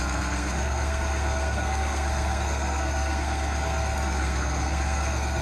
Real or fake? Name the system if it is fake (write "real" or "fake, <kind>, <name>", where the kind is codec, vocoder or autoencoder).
fake, codec, SNAC